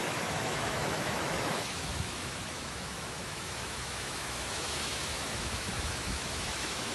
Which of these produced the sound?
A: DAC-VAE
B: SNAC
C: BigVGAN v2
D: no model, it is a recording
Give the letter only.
A